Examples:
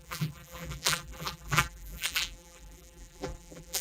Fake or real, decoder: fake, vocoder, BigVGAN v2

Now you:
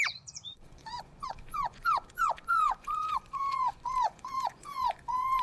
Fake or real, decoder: fake, vocoder, Vocos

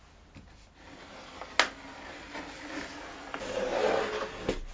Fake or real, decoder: real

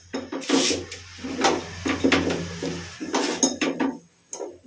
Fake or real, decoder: real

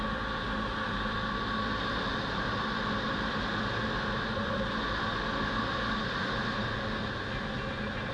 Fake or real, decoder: real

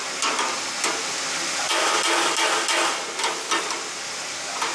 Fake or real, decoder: real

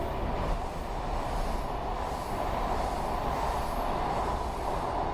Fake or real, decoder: real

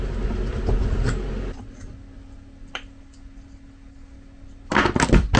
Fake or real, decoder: real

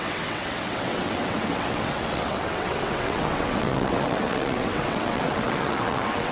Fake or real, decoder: fake, vocoder, WaveNeXt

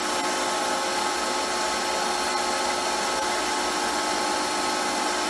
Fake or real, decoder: real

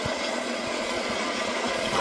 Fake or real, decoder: fake, vocoder, Vocos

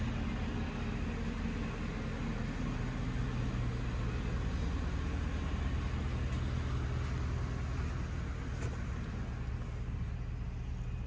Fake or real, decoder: real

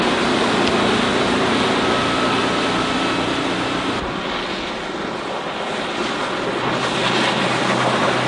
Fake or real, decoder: real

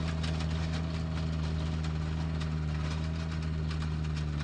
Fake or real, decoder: real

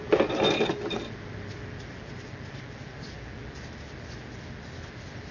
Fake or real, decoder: real